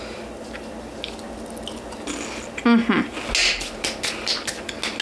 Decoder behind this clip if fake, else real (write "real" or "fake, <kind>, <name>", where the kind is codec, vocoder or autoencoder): real